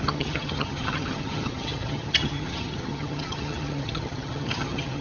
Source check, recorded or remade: remade